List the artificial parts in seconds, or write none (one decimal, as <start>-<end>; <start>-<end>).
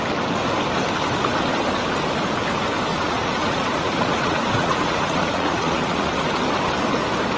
2.9-6.3